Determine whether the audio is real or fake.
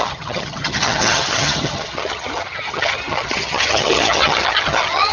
fake